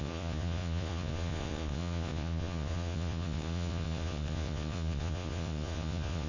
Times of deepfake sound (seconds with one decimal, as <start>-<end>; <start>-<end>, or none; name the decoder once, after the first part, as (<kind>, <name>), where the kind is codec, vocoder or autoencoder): 0.0-6.3 (vocoder, Vocos)